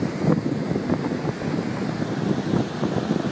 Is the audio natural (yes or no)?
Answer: yes